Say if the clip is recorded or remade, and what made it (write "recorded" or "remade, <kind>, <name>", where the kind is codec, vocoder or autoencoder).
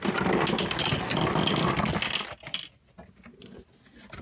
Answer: recorded